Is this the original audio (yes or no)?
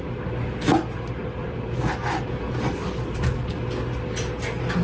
yes